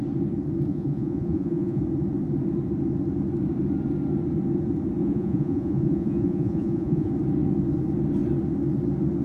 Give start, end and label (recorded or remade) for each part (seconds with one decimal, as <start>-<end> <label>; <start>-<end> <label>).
0.0-0.7 recorded; 0.7-1.8 remade; 1.8-5.0 recorded; 5.0-7.1 remade; 7.1-9.2 recorded